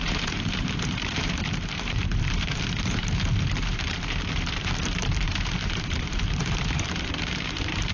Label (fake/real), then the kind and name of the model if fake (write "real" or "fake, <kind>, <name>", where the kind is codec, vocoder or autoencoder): fake, vocoder, BigVGAN v2